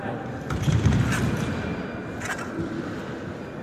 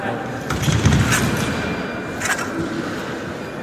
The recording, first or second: second